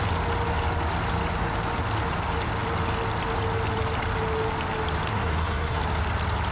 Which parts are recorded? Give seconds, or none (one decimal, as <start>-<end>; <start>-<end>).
0.0-5.1; 5.8-6.5